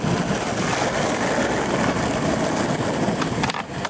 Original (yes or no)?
yes